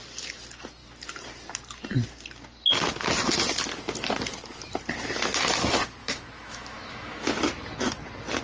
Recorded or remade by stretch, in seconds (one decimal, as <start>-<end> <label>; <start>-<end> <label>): 0.0-6.0 recorded; 6.0-7.3 remade; 7.3-8.4 recorded